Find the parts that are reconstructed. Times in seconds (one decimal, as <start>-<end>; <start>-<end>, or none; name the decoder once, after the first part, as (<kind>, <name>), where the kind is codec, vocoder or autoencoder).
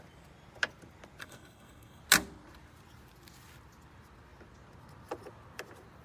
1.2-2.0 (codec, SNAC)